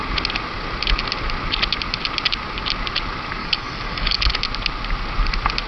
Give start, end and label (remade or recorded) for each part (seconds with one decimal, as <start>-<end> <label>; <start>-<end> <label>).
0.0-3.4 recorded; 3.4-4.2 remade; 4.2-5.7 recorded